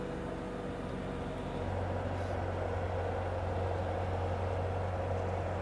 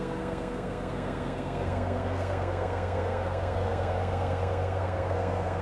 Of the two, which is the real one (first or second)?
first